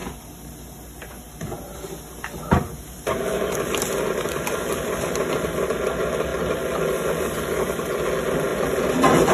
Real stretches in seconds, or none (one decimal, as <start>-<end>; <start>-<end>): 0.0-3.2; 6.3-7.5